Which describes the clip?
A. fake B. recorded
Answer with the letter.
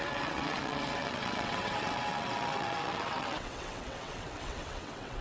A